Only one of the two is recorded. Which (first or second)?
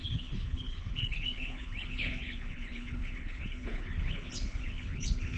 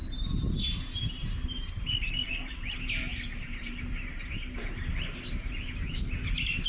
second